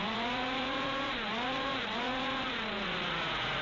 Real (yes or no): no